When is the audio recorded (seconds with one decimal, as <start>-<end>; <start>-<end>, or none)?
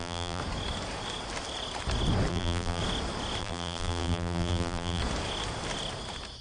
0.4-2.3; 2.8-3.4; 5.0-6.4